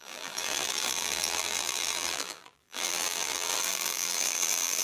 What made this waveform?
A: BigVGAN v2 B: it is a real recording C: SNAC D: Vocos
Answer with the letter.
A